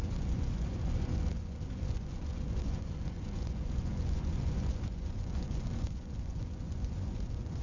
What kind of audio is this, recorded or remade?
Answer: remade